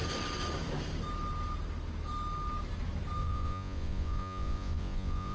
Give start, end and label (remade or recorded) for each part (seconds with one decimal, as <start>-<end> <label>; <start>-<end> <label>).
0.0-3.2 recorded; 3.2-5.3 remade